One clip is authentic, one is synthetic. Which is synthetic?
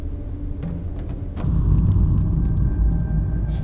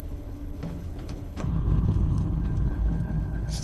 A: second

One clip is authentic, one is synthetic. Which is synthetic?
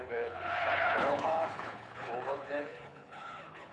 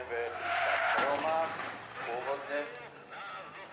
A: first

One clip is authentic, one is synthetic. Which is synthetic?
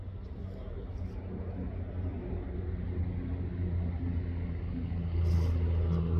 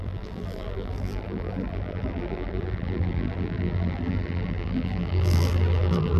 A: second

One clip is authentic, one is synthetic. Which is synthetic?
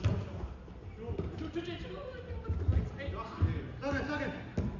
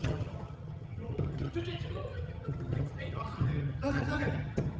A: second